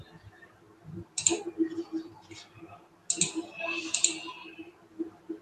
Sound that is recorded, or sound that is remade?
recorded